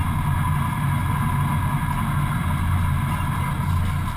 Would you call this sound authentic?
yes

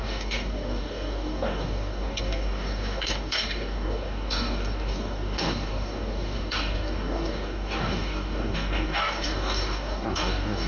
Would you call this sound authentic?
no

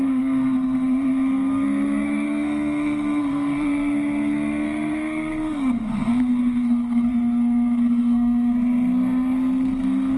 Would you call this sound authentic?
no